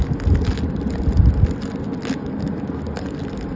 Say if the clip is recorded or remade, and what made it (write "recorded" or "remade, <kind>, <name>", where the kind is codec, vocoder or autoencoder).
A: recorded